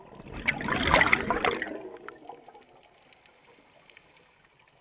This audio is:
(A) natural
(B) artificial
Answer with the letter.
A